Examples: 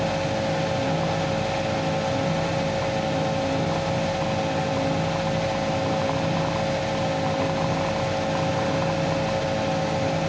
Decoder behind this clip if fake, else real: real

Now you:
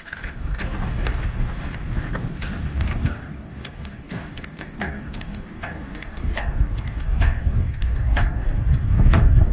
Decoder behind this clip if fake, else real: fake, codec, DAC